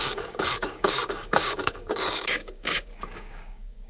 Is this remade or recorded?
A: remade